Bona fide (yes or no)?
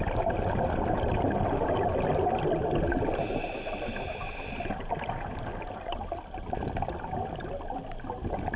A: yes